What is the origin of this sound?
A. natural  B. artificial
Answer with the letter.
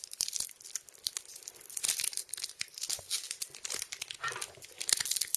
A